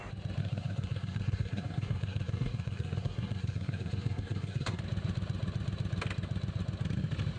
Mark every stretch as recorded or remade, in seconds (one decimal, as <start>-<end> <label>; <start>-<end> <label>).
0.0-0.4 recorded; 0.4-4.8 remade; 4.8-7.4 recorded

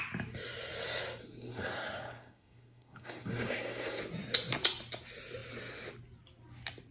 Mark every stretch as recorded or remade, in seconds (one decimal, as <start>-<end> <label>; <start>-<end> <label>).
0.0-1.2 recorded; 1.2-4.0 remade; 4.0-6.9 recorded

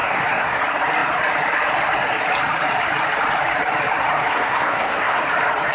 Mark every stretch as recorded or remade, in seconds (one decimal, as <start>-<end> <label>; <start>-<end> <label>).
0.0-0.6 remade; 0.6-4.2 recorded; 4.2-5.2 remade; 5.2-5.7 recorded

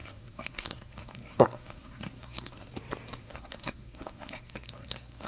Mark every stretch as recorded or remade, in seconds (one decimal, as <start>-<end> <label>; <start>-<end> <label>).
0.0-2.7 remade; 2.7-3.2 recorded; 3.2-5.3 remade